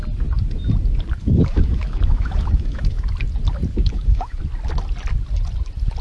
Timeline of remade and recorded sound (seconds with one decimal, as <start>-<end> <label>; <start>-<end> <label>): 0.0-1.2 recorded; 1.2-3.0 remade; 3.0-3.7 recorded; 3.7-4.4 remade; 4.4-6.0 recorded